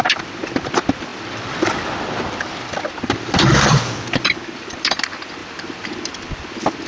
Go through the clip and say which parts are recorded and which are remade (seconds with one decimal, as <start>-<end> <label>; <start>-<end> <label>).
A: 0.0-6.9 remade